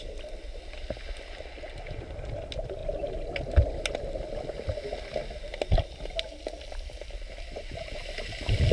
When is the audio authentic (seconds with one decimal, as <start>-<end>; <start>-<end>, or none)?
0.0-8.7